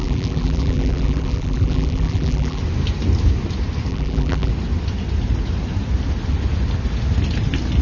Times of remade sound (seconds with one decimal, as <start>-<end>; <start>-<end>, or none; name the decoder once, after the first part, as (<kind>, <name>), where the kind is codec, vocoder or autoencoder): 0.0-2.6 (vocoder, BigVGAN v2); 3.9-4.5